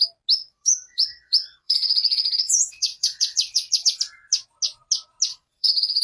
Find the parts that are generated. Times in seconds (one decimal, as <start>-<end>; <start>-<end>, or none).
0.4-4.0; 5.3-6.0